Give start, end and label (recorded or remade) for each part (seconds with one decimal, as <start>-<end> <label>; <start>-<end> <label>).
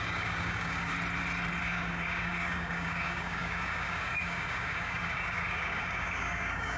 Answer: 0.0-0.9 remade; 0.9-1.6 recorded; 1.6-6.8 remade